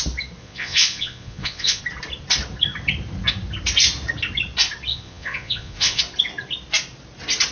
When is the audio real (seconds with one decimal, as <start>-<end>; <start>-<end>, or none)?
0.0-0.4; 1.8-4.9; 6.0-7.5